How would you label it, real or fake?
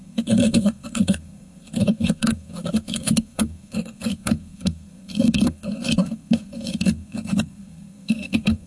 fake